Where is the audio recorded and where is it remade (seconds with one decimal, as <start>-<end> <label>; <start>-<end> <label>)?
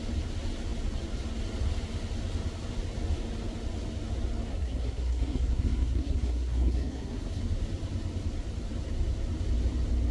0.0-4.5 recorded; 4.5-7.4 remade; 7.4-10.1 recorded